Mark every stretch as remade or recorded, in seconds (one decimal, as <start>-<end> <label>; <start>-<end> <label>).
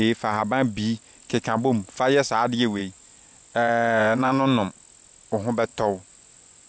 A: 0.0-2.8 recorded; 2.8-4.7 remade; 4.7-5.7 recorded; 5.7-6.7 remade